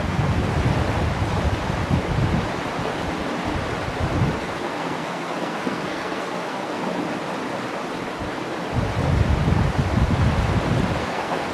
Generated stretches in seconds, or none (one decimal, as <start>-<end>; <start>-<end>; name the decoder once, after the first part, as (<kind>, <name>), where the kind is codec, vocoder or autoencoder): 0.0-0.5 (codec, SNAC); 4.4-6.8; 11.0-11.5